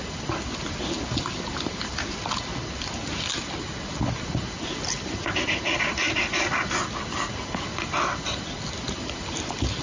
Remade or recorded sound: recorded